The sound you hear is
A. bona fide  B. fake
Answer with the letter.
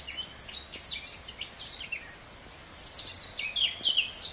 A